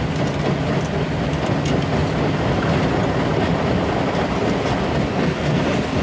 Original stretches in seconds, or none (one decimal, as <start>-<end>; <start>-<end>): 0.0-5.1; 5.6-6.0